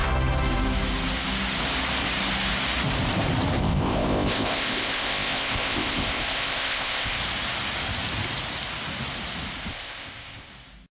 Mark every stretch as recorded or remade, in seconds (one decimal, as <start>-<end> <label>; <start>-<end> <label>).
0.0-3.6 recorded; 3.6-7.2 remade; 7.2-9.7 recorded; 9.7-10.5 remade; 10.5-11.0 recorded